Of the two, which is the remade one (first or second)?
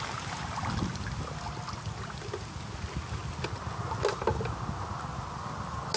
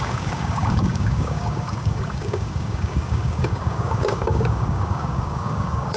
second